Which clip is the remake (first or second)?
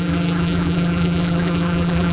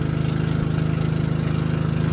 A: first